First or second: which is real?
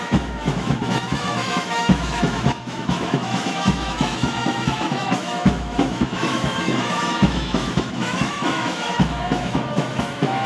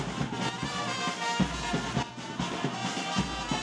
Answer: second